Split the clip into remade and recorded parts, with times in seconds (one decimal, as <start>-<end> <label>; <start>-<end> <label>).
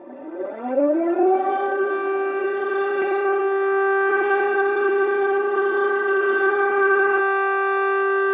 0.0-1.9 remade; 1.9-2.4 recorded; 2.4-3.4 remade; 3.4-4.1 recorded; 4.1-7.2 remade; 7.2-8.3 recorded